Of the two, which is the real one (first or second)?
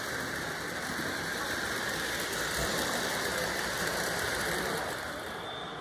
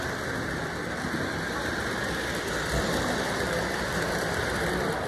second